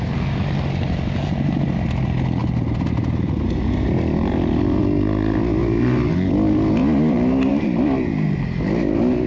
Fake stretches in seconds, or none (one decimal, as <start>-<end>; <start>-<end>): none